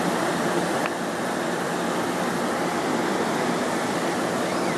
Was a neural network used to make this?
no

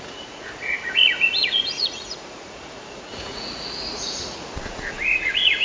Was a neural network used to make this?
yes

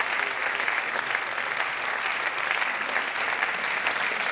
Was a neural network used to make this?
no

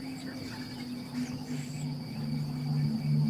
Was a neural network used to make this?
no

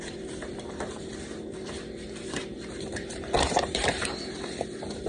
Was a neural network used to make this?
yes